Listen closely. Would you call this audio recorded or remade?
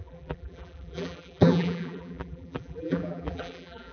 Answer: remade